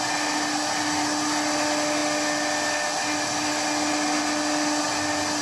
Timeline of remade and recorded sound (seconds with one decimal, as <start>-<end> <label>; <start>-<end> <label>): 0.0-5.4 recorded